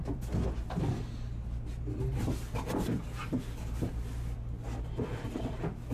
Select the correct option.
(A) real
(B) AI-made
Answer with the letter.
A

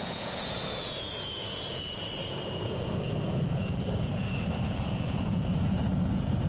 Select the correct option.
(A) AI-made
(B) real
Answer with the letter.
A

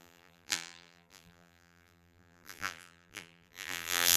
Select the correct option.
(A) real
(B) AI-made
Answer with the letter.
B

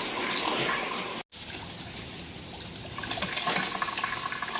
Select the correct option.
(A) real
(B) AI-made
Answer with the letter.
A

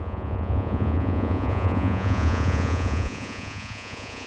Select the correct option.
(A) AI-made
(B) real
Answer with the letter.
A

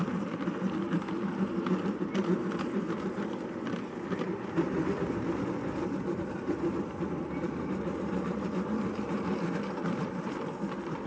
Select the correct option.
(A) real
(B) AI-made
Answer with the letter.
B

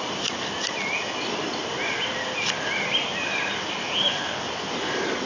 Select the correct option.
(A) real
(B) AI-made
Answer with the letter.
A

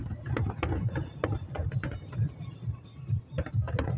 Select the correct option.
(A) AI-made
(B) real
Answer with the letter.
B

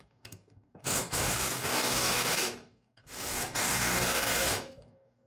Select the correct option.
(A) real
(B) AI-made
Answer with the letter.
B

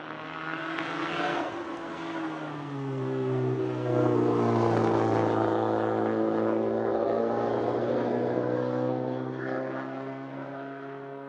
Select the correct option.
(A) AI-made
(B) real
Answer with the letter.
A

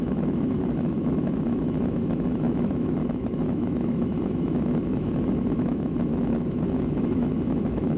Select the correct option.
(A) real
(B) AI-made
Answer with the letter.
B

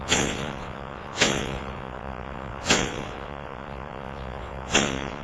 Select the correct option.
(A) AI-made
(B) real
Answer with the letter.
A